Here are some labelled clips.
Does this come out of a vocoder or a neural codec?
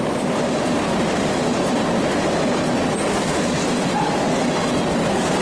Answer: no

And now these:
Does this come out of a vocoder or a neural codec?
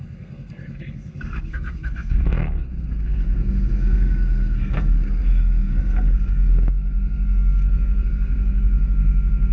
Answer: yes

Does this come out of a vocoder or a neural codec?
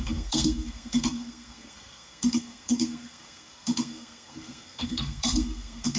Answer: yes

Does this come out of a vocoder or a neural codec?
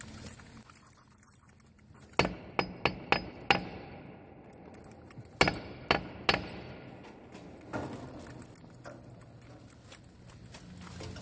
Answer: no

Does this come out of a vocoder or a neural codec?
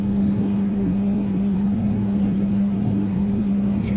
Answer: yes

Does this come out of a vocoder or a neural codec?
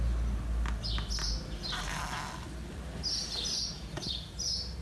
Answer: no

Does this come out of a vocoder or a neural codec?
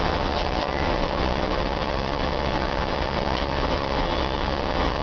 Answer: yes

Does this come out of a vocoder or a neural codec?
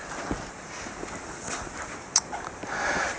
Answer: no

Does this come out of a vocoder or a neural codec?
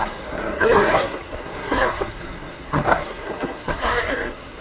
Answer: yes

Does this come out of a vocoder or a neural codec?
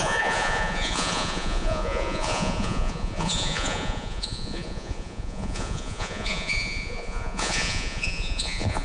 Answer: yes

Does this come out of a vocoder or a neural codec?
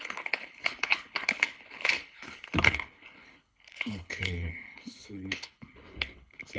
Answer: yes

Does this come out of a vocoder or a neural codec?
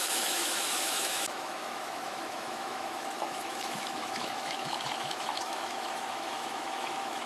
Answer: yes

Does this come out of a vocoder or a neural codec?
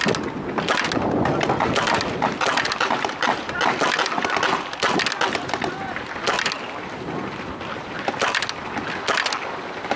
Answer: no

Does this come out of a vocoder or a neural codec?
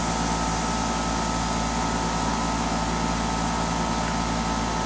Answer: no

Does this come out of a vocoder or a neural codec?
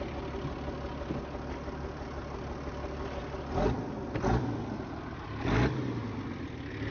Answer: no